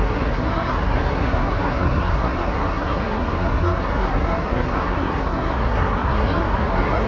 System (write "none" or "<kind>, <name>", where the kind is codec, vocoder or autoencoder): codec, SNAC